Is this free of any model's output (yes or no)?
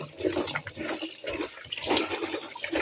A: no